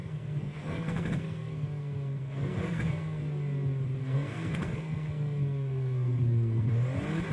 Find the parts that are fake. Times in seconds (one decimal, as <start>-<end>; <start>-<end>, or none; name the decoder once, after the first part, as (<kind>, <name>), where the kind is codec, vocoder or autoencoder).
0.0-3.2 (codec, SNAC); 4.0-6.7